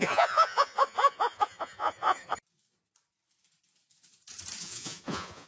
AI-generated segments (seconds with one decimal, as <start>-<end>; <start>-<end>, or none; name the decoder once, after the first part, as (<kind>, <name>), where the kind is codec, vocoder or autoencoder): 0.0-2.3 (vocoder, Vocos); 4.6-5.5